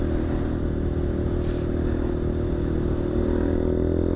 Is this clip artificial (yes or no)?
no